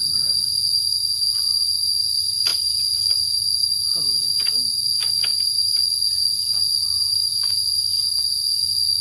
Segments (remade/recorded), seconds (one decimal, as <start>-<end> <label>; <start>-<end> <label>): 0.0-9.0 recorded